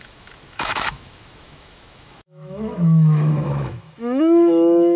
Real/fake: fake